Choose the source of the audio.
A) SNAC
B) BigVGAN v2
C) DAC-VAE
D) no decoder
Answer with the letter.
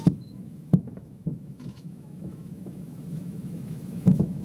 C